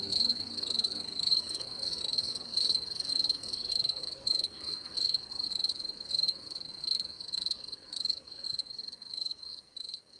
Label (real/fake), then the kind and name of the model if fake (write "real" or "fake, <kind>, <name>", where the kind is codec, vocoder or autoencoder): fake, codec, SNAC